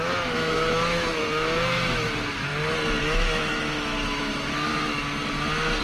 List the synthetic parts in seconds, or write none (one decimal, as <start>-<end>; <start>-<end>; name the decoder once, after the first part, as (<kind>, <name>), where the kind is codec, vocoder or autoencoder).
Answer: 0.0-2.5 (autoencoder, DAC-VAE); 3.0-4.7